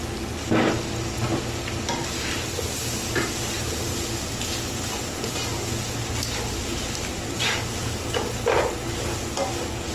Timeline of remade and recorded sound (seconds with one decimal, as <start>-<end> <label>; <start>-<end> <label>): 0.0-9.9 recorded